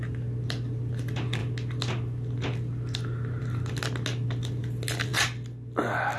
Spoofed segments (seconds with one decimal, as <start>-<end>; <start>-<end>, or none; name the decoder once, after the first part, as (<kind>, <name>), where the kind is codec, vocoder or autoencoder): none